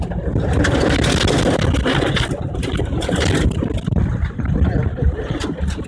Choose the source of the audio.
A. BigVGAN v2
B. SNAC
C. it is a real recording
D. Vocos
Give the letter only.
C